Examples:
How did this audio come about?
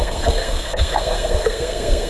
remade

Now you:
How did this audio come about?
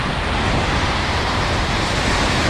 remade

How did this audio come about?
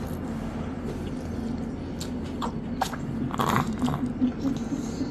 recorded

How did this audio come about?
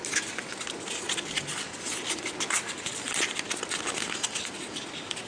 recorded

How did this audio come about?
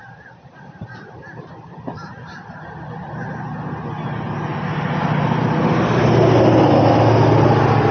recorded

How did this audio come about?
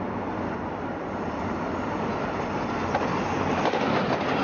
recorded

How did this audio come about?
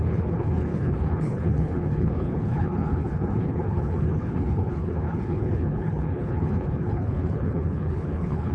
remade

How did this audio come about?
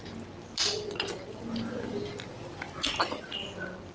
recorded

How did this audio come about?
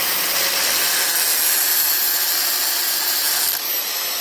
recorded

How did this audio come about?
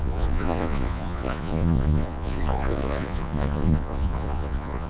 remade